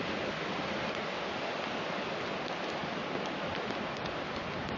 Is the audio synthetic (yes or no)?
no